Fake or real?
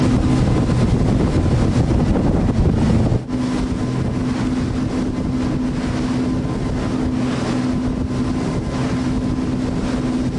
real